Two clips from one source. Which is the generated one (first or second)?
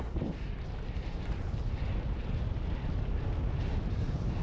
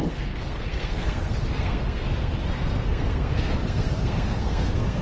second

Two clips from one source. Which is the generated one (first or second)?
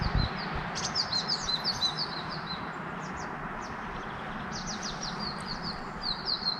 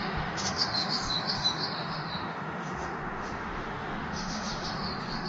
second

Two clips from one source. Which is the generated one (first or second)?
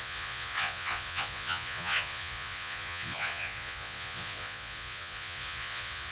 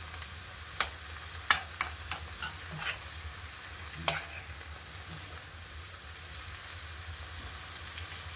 first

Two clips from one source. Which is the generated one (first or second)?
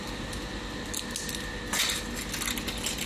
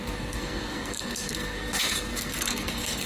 second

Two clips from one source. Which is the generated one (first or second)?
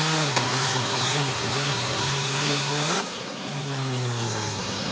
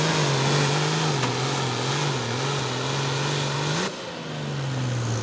first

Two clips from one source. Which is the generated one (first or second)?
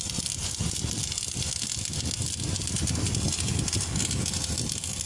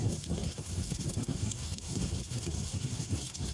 second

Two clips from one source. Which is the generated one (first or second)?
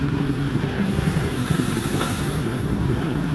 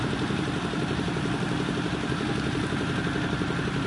first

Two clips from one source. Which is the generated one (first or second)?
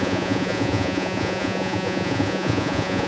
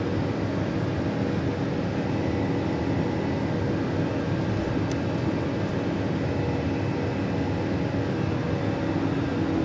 first